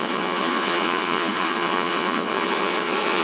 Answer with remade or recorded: remade